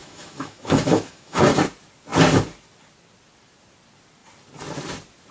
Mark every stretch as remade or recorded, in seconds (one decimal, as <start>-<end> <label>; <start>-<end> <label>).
0.0-1.4 remade; 1.4-5.3 recorded